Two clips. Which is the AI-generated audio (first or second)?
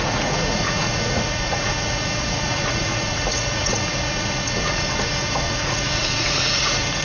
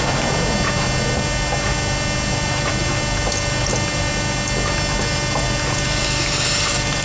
first